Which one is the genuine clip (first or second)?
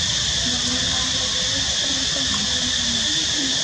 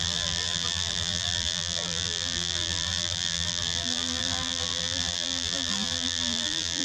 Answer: first